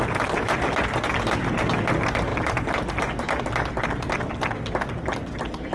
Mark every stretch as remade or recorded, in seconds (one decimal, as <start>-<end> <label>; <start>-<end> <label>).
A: 0.0-5.7 recorded